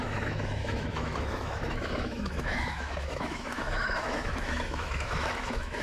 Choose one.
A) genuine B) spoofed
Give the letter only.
B